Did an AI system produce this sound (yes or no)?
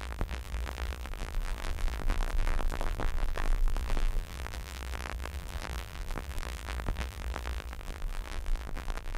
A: yes